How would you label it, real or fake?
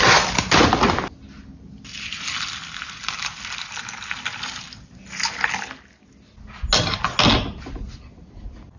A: real